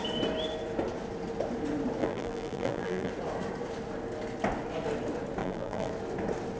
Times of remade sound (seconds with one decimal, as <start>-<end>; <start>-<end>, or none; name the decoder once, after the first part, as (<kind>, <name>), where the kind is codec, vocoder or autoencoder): 2.0-3.1 (vocoder, BigVGAN v2); 5.4-5.9